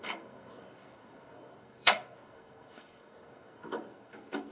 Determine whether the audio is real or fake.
fake